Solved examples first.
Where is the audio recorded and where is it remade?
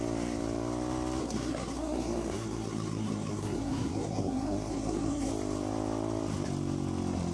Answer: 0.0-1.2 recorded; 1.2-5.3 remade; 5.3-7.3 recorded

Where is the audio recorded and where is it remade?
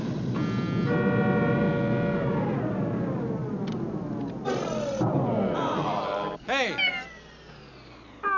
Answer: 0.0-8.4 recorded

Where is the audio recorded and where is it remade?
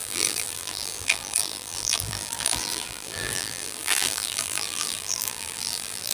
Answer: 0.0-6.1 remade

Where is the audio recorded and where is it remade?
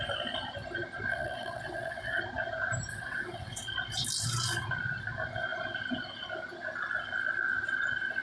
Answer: 0.0-1.1 recorded; 1.1-2.2 remade; 2.2-2.9 recorded; 2.9-3.6 remade; 3.6-8.2 recorded